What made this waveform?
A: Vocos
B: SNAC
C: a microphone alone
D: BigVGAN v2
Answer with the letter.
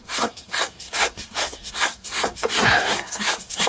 B